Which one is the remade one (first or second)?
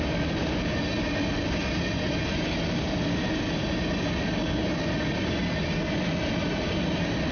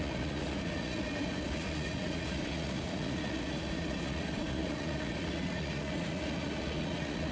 second